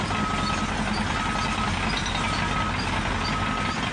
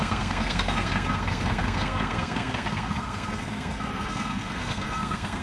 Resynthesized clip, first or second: second